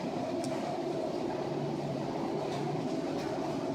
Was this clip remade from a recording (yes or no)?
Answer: yes